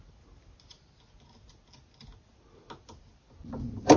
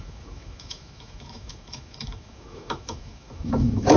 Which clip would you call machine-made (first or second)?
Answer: second